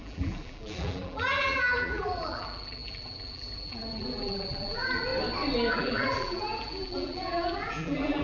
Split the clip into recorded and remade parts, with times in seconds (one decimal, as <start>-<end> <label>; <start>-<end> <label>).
0.0-5.1 remade; 5.1-5.7 recorded; 5.7-8.2 remade